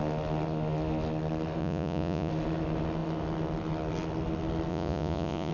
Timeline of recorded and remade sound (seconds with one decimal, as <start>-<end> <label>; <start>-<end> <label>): 0.0-1.6 recorded; 1.6-2.3 remade; 2.3-4.7 recorded; 4.7-5.5 remade

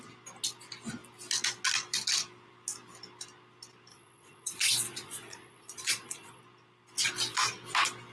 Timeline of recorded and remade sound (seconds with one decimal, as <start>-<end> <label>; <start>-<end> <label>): 0.0-3.9 recorded; 3.9-6.4 remade; 6.4-8.1 recorded

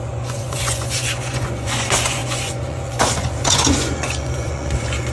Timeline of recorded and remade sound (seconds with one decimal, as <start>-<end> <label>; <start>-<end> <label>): 0.0-5.1 remade

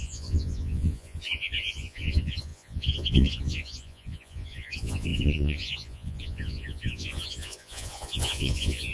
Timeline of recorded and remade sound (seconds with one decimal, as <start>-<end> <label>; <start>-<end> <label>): 0.0-8.9 remade